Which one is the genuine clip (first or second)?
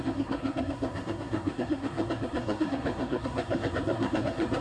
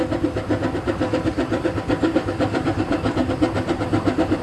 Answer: second